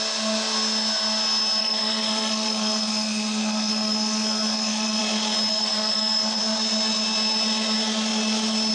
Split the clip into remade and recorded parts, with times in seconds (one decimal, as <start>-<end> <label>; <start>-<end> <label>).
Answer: 0.0-1.6 recorded; 1.6-5.0 remade; 5.0-5.5 recorded; 5.5-6.4 remade; 6.4-8.7 recorded